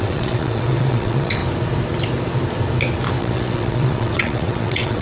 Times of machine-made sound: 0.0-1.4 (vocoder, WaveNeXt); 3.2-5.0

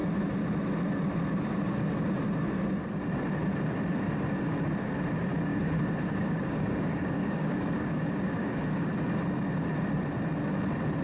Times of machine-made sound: 5.5-8.9 (codec, DAC)

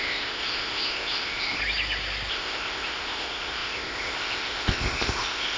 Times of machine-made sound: 0.0-1.6 (codec, ZipCodec); 2.3-5.6